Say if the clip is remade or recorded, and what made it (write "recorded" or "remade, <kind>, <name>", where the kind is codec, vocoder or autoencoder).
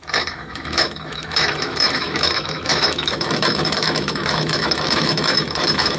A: remade, autoencoder, DAC-VAE